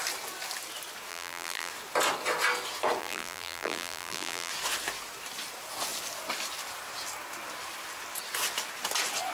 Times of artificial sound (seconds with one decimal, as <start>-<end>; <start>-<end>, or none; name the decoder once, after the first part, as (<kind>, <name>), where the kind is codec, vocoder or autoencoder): 1.1-1.7 (vocoder, BigVGAN v2); 3.0-4.5